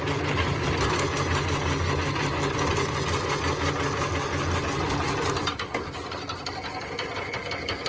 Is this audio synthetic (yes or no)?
no